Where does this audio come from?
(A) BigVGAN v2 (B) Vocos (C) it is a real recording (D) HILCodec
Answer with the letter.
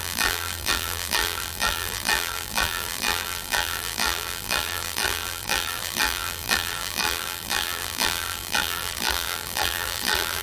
A